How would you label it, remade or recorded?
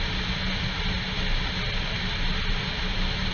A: recorded